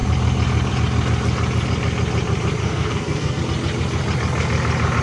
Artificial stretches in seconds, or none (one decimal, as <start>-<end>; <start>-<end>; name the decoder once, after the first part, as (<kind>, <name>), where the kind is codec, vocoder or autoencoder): 2.6-3.4 (codec, SNAC)